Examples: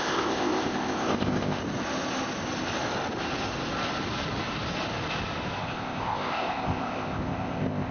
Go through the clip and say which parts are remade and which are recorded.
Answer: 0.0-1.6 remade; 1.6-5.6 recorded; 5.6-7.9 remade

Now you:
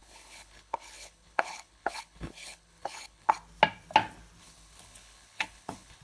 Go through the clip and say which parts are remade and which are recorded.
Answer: 0.0-3.3 remade; 3.3-4.4 recorded; 4.4-6.0 remade

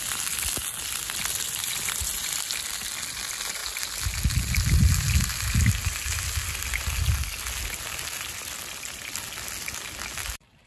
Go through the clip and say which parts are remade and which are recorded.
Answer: 0.0-10.7 recorded

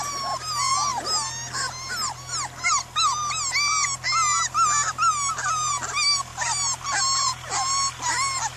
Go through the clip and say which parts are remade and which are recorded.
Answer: 0.0-8.6 recorded

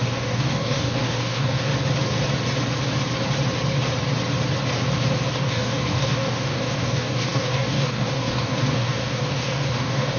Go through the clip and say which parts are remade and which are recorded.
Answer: 0.0-1.7 remade; 1.7-5.3 recorded; 5.3-10.2 remade

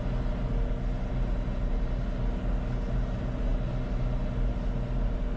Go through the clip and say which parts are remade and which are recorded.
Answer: 0.0-5.4 recorded